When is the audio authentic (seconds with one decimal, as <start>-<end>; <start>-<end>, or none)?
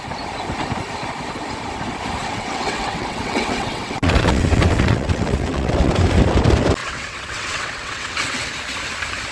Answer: 0.0-2.2; 5.9-6.8; 8.5-9.3